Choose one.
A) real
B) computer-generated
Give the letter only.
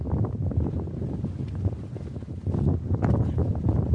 A